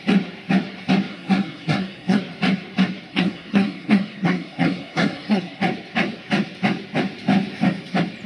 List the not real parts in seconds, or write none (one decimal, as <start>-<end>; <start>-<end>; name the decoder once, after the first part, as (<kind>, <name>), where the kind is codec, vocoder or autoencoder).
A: 1.1-2.2 (codec, SNAC); 3.1-5.6